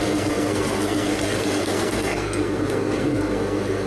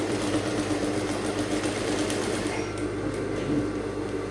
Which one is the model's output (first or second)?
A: first